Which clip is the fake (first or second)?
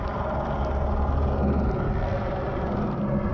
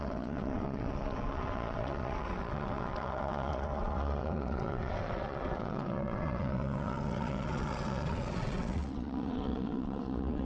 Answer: second